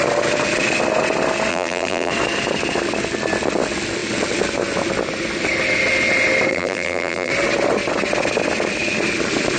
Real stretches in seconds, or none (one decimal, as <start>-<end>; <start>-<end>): 0.0-1.5; 2.1-6.5; 7.3-9.6